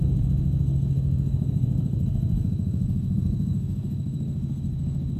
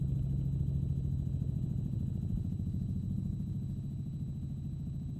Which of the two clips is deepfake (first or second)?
first